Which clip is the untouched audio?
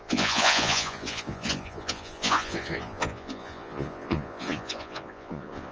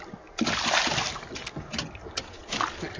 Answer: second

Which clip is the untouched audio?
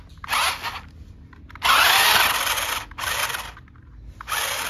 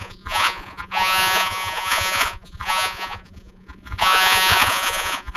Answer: first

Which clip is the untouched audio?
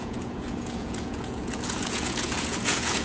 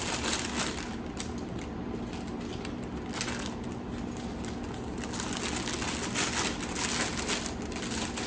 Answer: second